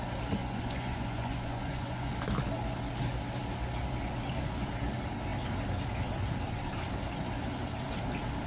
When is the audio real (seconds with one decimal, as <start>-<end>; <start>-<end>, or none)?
0.0-0.4; 2.1-8.5

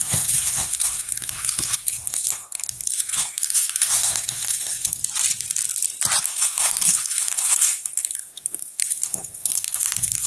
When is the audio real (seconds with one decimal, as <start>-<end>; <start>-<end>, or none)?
5.0-6.2